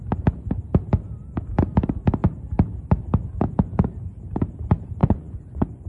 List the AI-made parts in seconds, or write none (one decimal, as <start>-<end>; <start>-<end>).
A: 5.0-5.9